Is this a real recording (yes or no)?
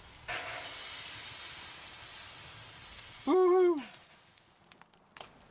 yes